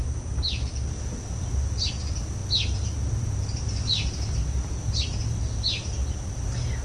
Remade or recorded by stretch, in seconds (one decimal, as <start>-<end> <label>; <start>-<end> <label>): 0.0-6.8 recorded